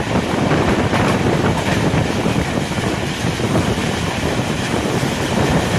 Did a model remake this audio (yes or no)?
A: yes